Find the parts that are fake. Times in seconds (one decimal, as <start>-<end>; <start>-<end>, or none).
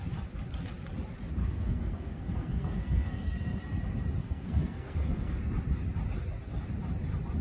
1.4-3.6; 4.2-5.4